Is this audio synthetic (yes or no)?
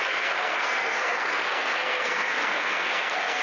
yes